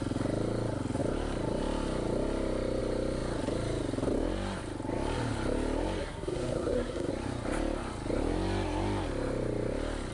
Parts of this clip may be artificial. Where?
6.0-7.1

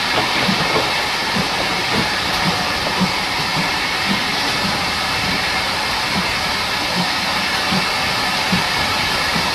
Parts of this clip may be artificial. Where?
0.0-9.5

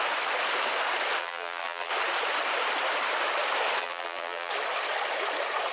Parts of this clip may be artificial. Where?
1.2-1.9; 3.8-4.5

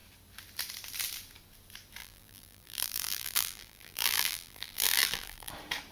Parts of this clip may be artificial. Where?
2.0-5.5

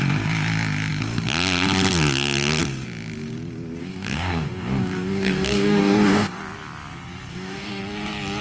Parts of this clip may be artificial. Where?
3.8-6.4; 7.3-7.8

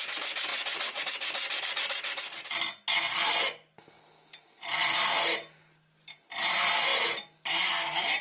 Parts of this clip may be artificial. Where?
none

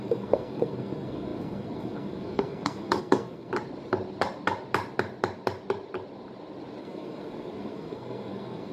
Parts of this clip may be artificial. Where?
0.0-3.5; 6.8-8.7

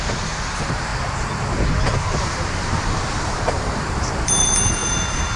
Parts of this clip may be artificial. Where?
0.0-0.9; 2.2-5.4